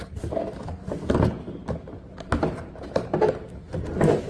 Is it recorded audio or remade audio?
recorded